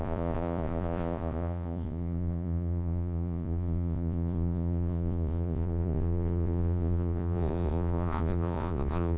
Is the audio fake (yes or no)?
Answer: yes